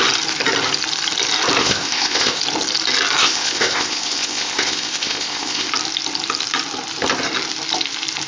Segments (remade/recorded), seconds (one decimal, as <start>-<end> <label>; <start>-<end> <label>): 0.0-1.6 recorded; 1.6-2.4 remade; 2.4-3.2 recorded; 3.2-5.7 remade; 5.7-8.3 recorded